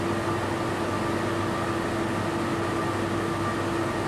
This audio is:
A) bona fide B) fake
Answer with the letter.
A